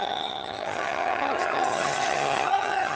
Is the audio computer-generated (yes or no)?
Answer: yes